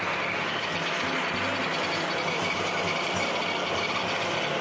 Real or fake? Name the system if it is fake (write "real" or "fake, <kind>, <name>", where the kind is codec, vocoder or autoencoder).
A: real